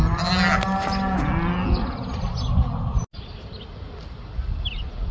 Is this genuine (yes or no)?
yes